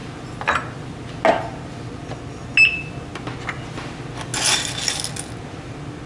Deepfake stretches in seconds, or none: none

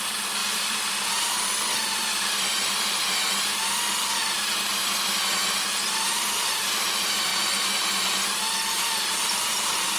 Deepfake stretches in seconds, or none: 0.0-4.1 (vocoder, BigVGAN v2); 4.7-7.3; 8.0-10.0

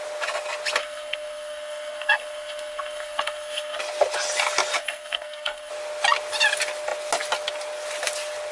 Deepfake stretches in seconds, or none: 0.8-3.8 (codec, SNAC); 4.8-5.7

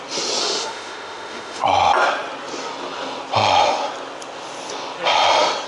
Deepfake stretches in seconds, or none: 0.4-1.6 (autoencoder, DAC-VAE)